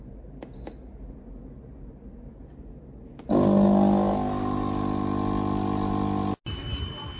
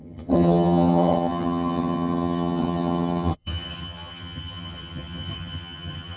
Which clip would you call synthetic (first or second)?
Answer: second